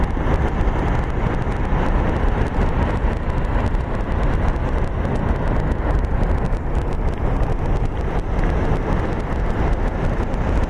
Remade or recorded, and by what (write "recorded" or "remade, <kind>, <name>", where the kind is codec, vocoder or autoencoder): recorded